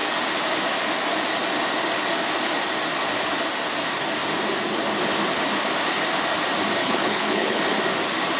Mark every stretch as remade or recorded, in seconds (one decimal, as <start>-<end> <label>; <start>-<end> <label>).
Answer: 0.0-6.8 recorded; 6.8-7.6 remade; 7.6-8.4 recorded